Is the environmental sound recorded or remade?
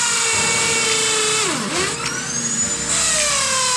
recorded